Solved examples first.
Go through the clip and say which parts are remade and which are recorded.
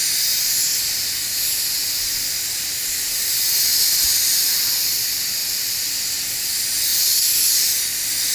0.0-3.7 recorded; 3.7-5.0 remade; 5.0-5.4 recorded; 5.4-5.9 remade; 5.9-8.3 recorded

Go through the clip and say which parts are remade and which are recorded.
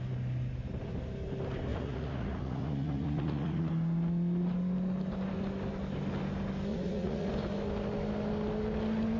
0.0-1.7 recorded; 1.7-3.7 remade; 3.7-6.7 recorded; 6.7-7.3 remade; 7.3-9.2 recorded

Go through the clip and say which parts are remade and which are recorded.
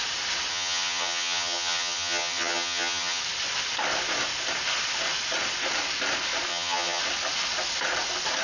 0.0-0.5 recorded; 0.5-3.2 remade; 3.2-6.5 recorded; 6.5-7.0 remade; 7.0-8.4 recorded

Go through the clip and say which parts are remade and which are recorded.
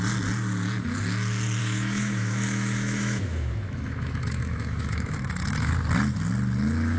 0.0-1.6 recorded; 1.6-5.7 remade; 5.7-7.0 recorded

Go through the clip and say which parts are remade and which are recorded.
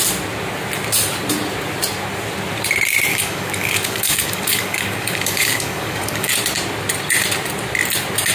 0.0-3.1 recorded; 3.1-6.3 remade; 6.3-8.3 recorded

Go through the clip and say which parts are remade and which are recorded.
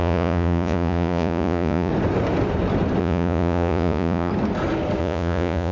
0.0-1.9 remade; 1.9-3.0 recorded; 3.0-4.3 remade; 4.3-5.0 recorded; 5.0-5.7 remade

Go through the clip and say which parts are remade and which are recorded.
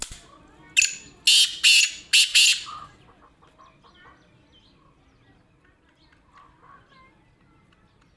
0.0-8.2 recorded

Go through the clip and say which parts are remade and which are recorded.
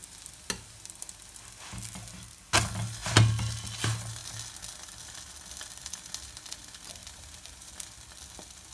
0.0-7.0 recorded; 7.0-7.7 remade; 7.7-8.7 recorded